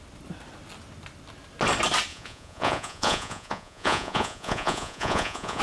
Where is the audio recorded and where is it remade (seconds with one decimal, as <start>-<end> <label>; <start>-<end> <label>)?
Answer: 0.0-2.1 recorded; 2.1-5.6 remade